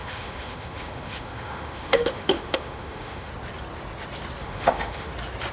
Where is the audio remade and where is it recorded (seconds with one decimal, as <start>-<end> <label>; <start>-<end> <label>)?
0.0-3.3 remade; 3.3-4.4 recorded; 4.4-5.1 remade; 5.1-5.5 recorded